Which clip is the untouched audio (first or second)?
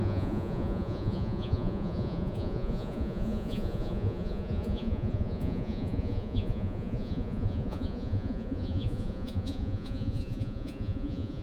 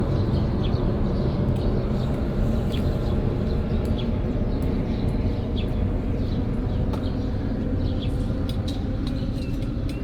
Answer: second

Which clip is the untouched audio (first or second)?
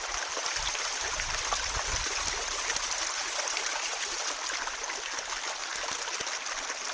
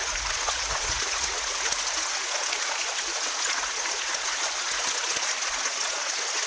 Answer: first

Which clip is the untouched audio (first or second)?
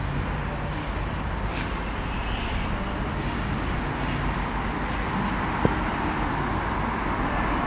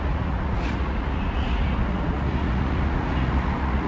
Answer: first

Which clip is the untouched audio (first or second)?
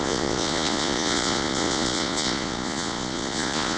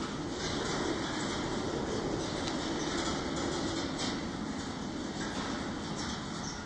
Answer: second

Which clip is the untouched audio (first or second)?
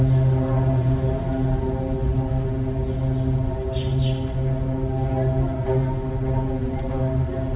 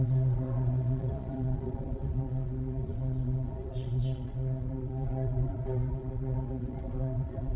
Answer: first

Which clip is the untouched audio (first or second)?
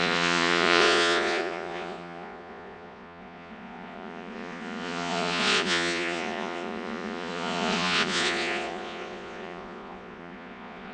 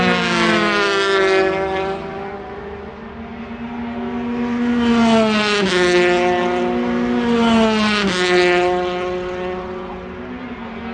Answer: second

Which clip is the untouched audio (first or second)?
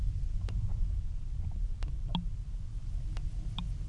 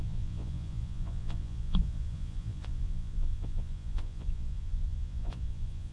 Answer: first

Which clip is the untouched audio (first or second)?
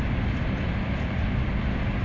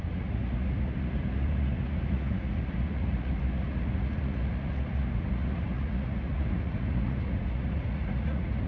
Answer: first